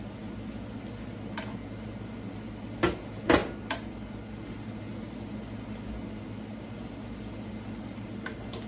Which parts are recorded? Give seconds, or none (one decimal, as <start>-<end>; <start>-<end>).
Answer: 0.0-8.7